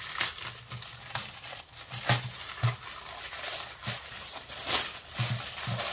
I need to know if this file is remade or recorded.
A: recorded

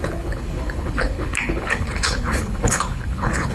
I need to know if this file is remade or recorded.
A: remade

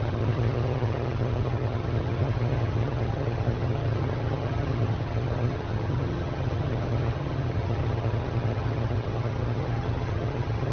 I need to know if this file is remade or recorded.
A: remade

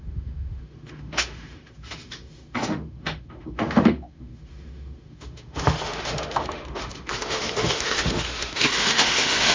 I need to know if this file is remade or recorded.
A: remade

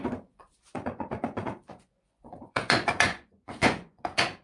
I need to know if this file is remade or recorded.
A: remade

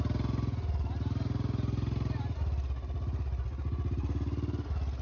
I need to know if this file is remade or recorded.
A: recorded